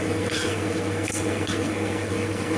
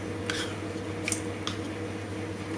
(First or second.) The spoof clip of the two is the first